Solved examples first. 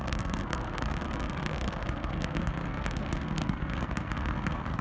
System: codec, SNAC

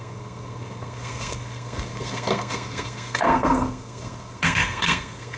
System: codec, SNAC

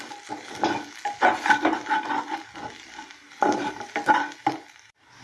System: none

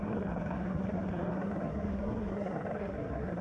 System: codec, SNAC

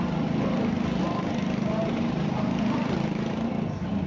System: none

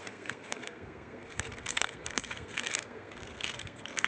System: codec, SNAC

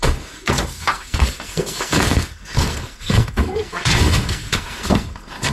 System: codec, SNAC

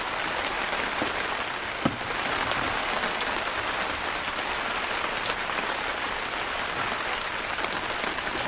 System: none